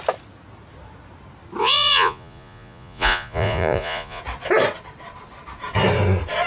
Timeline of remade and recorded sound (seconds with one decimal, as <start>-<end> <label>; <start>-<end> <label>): 0.0-1.6 recorded; 1.6-4.2 remade; 4.2-6.5 recorded